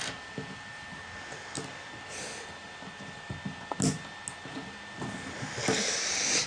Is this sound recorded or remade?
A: recorded